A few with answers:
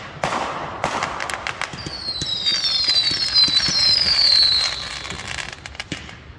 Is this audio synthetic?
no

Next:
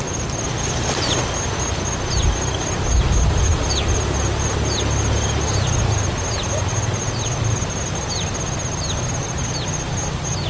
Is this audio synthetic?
no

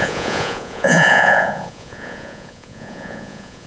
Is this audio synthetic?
yes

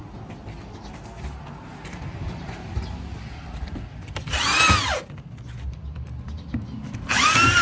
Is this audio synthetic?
no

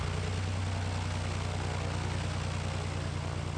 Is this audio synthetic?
no